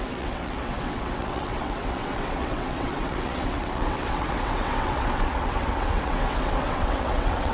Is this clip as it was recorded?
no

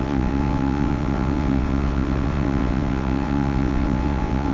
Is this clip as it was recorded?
no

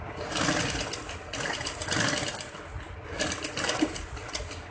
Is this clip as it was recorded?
yes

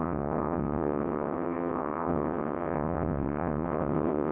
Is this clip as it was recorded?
no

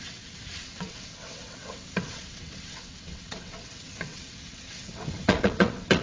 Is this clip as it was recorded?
no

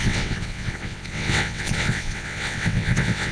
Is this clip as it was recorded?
no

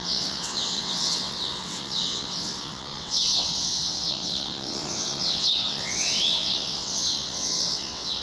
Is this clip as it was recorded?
no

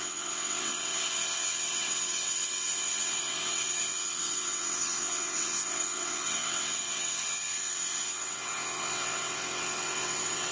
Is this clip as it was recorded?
no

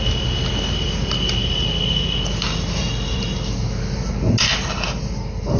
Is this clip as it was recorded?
yes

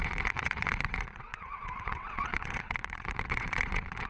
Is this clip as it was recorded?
no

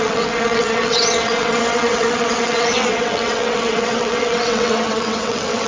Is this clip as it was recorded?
no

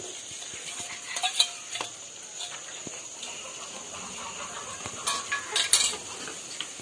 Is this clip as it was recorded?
yes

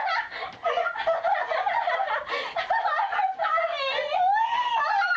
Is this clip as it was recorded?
yes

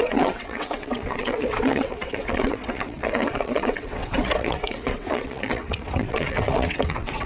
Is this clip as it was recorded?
no